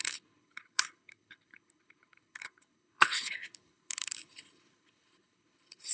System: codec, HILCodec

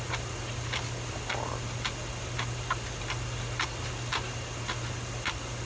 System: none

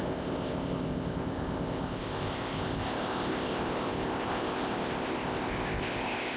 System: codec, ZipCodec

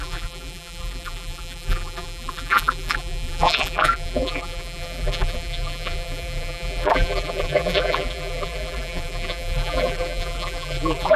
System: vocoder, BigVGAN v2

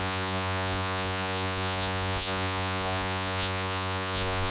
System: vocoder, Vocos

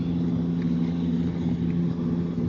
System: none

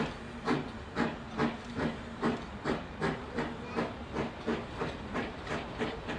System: none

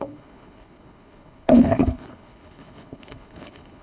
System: codec, HILCodec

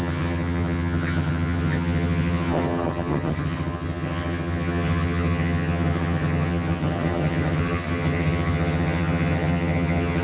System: vocoder, HiFi-GAN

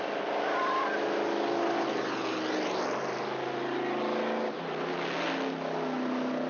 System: none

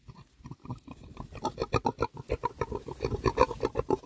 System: none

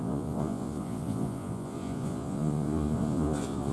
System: vocoder, Vocos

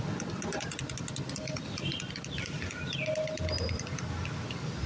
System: none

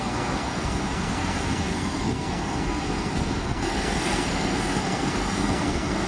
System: codec, SNAC